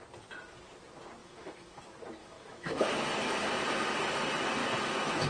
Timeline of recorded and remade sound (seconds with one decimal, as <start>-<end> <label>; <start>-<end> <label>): 0.0-1.2 recorded; 1.2-1.8 remade; 1.8-2.2 recorded; 2.2-2.9 remade; 2.9-4.6 recorded; 4.6-5.3 remade